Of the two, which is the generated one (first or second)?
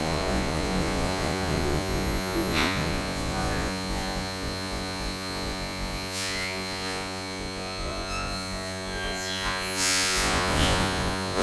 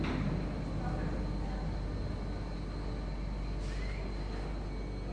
first